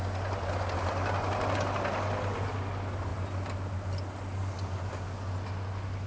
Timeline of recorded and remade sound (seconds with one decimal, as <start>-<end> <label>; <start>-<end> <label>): 0.0-6.1 recorded

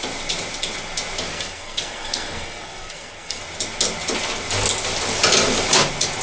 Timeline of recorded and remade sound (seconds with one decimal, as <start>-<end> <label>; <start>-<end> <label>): 0.0-1.3 recorded; 1.3-3.4 remade; 3.4-6.2 recorded

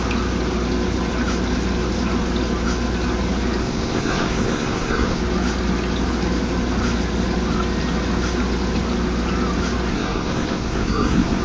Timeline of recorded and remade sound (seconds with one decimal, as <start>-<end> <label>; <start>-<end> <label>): 0.0-3.6 recorded; 3.6-5.2 remade; 5.2-9.9 recorded; 9.9-11.4 remade

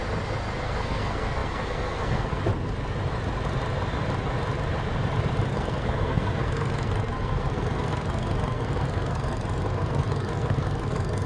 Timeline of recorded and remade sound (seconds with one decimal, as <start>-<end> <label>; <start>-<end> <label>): 0.0-0.6 recorded; 0.6-2.4 remade; 2.4-5.5 recorded; 5.5-11.3 remade

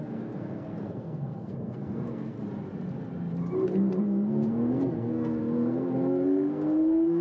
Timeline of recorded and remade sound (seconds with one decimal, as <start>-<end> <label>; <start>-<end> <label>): 0.0-2.4 remade; 2.4-4.0 recorded; 4.0-7.2 remade

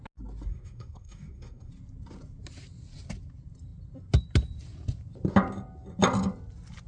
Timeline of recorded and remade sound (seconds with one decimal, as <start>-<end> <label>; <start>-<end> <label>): 0.0-0.5 recorded; 0.5-1.7 remade; 1.7-6.9 recorded

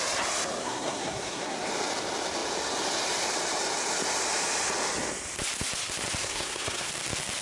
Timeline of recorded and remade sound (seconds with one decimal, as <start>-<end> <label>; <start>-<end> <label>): 0.0-0.6 recorded; 0.6-1.7 remade; 1.7-6.2 recorded; 6.2-6.9 remade; 6.9-7.4 recorded